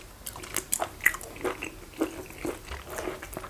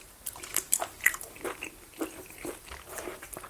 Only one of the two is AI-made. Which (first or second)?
second